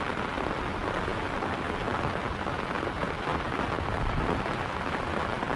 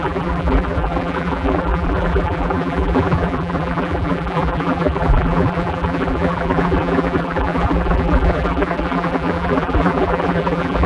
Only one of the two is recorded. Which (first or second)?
first